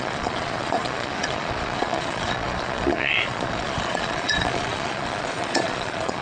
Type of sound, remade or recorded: remade